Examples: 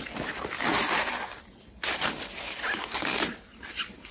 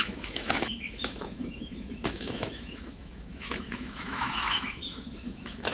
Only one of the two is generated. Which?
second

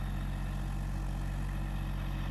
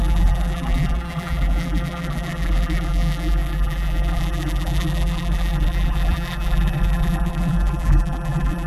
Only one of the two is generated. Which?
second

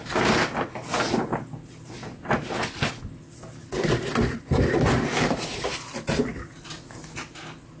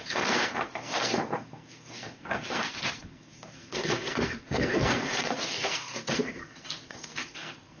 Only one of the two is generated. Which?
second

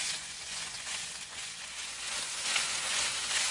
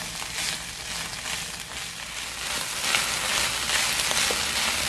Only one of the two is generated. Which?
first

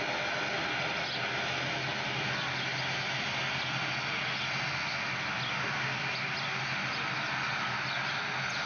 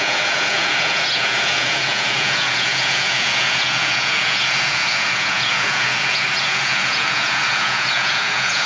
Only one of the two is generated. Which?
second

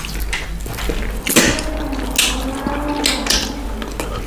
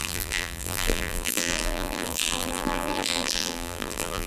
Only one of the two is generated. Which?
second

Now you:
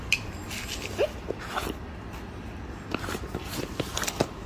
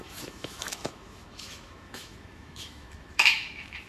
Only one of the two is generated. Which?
second